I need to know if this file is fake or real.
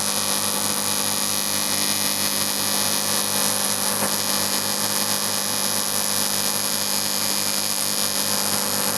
real